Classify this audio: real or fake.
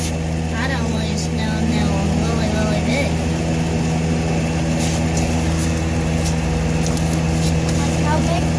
real